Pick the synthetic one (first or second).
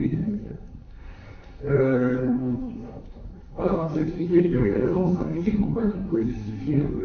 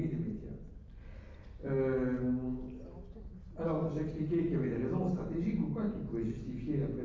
first